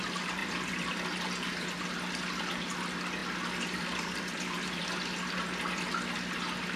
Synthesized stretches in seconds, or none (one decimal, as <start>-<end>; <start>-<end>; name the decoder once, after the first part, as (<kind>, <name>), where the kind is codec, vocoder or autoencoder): 0.4-1.3 (vocoder, BigVGAN v2); 3.2-4.8